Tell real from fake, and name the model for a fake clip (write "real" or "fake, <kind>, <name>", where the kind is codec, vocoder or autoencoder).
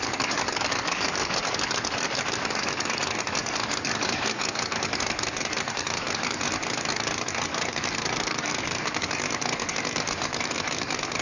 fake, codec, DAC